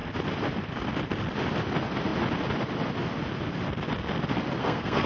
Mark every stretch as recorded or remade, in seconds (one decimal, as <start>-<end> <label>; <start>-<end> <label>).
0.0-4.6 recorded; 4.6-5.1 remade